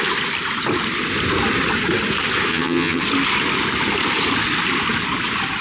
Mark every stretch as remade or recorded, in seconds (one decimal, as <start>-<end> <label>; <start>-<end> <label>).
0.0-2.5 recorded; 2.5-3.0 remade; 3.0-5.6 recorded